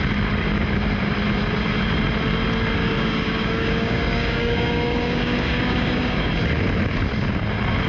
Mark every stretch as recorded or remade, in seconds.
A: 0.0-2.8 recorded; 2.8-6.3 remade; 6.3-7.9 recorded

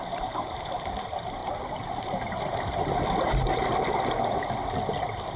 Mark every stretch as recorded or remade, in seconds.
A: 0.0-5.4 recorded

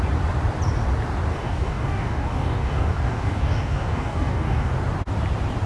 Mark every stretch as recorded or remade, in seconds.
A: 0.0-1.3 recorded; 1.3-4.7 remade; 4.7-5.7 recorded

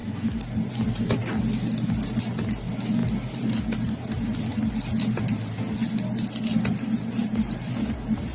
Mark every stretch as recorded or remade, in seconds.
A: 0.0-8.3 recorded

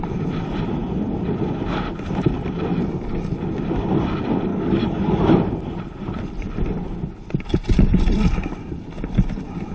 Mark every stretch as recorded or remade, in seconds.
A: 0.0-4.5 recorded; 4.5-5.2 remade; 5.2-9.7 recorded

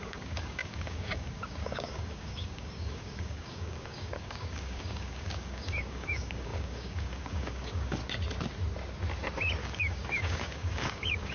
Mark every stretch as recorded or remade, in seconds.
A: 0.0-8.0 remade; 8.0-9.6 recorded; 9.6-11.3 remade

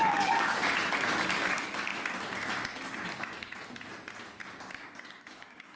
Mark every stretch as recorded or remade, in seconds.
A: 0.0-0.6 remade; 0.6-1.4 recorded; 1.4-1.9 remade; 1.9-5.2 recorded; 5.2-5.8 remade

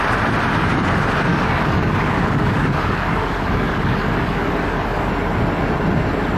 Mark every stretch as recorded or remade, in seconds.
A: 0.0-1.3 recorded; 1.3-5.1 remade; 5.1-6.4 recorded